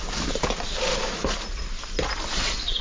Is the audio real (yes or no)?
yes